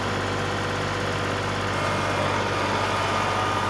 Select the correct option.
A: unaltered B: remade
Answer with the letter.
A